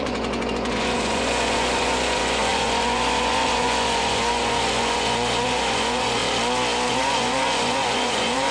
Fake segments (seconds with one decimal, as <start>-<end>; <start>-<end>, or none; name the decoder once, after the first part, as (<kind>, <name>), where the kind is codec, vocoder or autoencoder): 0.0-6.2 (vocoder, Vocos); 6.9-8.5